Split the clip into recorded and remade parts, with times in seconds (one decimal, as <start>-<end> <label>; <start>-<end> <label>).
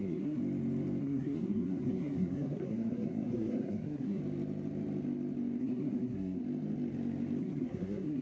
0.0-0.4 remade; 0.4-1.0 recorded; 1.0-4.2 remade; 4.2-5.6 recorded; 5.6-6.4 remade; 6.4-7.4 recorded; 7.4-8.2 remade